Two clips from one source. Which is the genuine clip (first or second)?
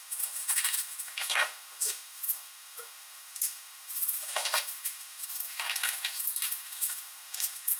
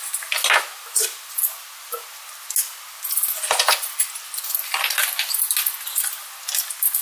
second